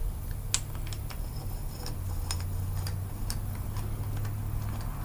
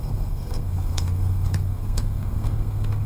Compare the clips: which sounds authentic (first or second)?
first